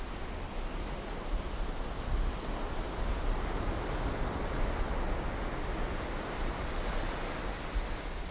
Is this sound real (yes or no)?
yes